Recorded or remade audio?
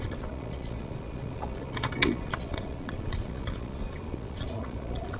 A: remade